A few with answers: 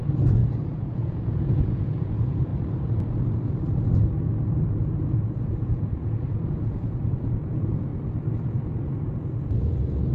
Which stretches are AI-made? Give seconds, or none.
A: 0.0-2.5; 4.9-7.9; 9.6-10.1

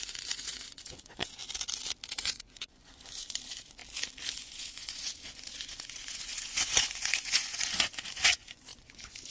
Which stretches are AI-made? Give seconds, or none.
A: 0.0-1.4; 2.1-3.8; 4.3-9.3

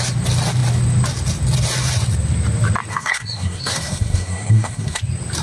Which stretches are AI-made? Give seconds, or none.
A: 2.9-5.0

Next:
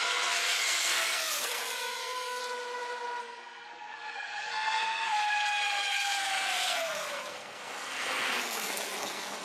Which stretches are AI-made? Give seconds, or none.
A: 0.0-2.4; 3.2-9.4

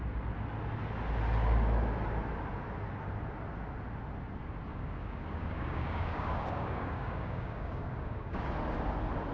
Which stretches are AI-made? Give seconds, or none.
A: 4.7-8.5

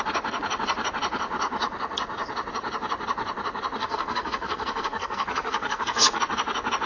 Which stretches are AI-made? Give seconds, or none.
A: 3.8-6.2

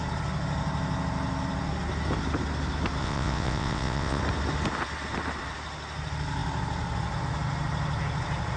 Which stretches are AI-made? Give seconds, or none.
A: 3.0-4.2

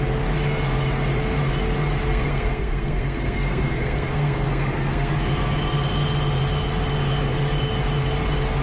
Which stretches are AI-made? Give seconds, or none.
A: 2.1-5.1